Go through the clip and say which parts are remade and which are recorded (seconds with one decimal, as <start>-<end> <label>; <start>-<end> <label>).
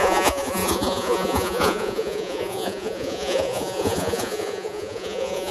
0.0-5.5 remade